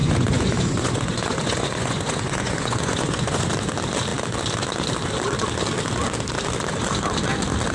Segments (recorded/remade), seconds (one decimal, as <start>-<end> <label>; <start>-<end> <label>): 0.0-3.5 remade; 3.5-7.7 recorded